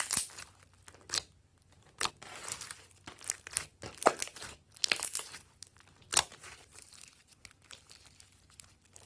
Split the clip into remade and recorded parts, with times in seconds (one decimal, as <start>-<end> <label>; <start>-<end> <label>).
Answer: 0.0-1.5 recorded; 1.5-2.1 remade; 2.1-3.7 recorded; 3.7-4.2 remade; 4.2-6.1 recorded; 6.1-7.4 remade; 7.4-9.1 recorded